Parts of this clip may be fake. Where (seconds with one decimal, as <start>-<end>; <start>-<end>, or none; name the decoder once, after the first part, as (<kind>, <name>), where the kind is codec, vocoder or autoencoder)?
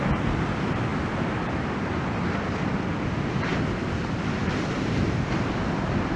4.4-5.8 (vocoder, BigVGAN v2)